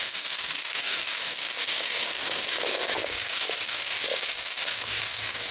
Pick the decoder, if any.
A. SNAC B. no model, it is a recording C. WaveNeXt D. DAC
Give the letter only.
D